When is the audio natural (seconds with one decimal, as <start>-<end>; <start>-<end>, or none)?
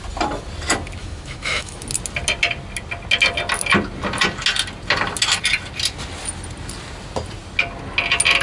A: 0.0-1.0; 1.8-8.4